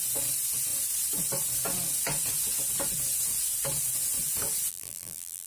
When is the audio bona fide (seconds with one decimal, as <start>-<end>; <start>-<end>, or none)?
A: 0.0-4.7